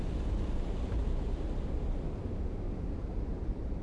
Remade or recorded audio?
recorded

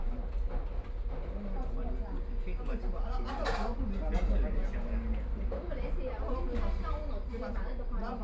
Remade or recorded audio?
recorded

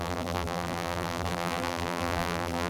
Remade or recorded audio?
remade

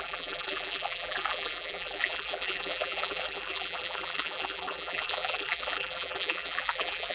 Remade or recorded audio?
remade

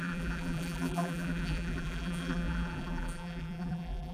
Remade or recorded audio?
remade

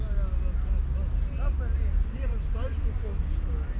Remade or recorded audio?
recorded